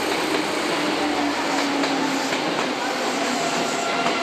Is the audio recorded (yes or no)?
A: yes